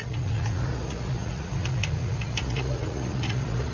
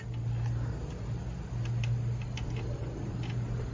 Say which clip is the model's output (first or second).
first